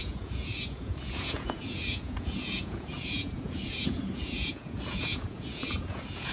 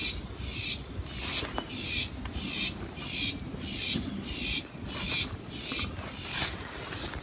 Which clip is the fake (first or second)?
first